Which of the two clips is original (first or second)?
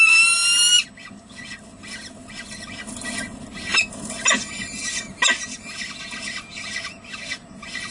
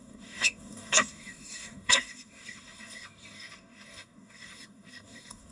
first